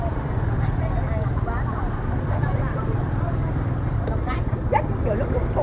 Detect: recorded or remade recorded